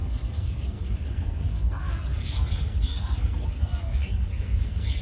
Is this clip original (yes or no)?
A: no